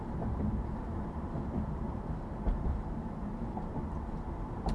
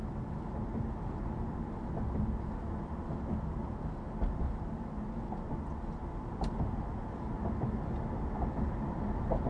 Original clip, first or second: second